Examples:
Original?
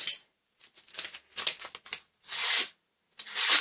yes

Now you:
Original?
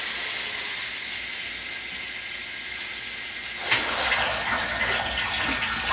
yes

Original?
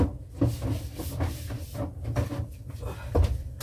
yes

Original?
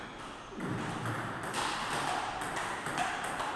yes